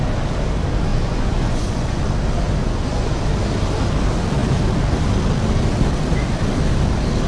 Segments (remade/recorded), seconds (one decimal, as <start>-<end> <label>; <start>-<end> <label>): 0.0-0.9 recorded; 0.9-2.0 remade; 2.0-2.6 recorded; 2.6-3.2 remade; 3.2-7.3 recorded

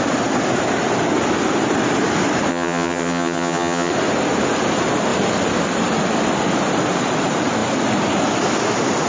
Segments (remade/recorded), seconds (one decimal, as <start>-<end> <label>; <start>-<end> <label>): 0.0-2.5 recorded; 2.5-3.9 remade; 3.9-9.1 recorded

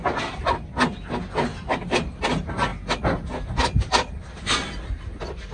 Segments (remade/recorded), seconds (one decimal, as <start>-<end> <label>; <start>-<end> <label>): 0.0-1.5 recorded; 1.5-2.2 remade; 2.2-5.5 recorded

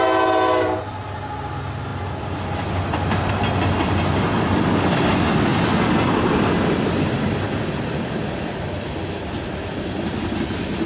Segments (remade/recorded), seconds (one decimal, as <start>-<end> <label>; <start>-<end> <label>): 0.0-10.9 recorded

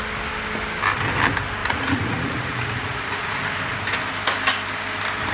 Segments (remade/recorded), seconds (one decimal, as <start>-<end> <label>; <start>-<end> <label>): 0.0-1.6 recorded; 1.6-3.4 remade; 3.4-5.3 recorded

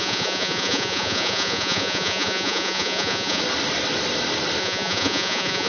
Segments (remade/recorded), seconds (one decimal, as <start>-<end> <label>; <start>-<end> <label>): 0.0-3.4 remade; 3.4-4.6 recorded; 4.6-5.7 remade

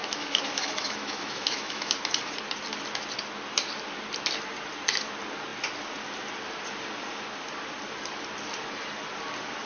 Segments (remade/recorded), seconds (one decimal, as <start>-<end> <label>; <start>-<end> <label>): 0.0-1.9 remade; 1.9-9.7 recorded